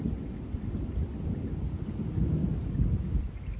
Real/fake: real